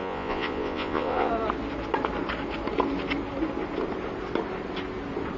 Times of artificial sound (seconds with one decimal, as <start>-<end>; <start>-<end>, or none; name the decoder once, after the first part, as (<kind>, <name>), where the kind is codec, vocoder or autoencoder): 0.0-1.3 (vocoder, Vocos)